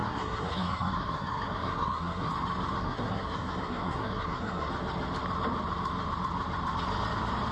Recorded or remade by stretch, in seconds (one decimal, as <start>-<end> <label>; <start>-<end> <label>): 0.0-2.3 remade; 2.3-2.8 recorded; 2.8-4.7 remade; 4.7-7.5 recorded